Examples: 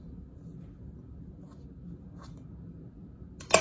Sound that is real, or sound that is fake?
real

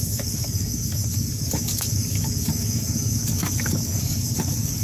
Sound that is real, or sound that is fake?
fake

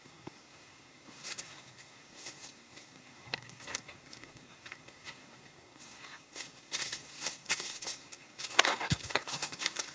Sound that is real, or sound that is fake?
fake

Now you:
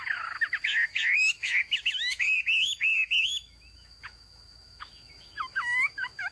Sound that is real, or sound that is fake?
fake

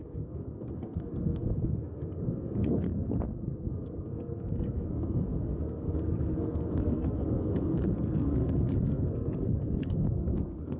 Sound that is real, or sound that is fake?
fake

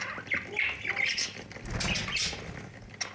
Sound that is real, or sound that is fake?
real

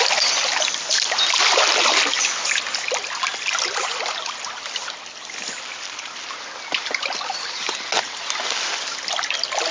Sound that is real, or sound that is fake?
real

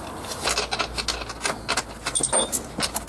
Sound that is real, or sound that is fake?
real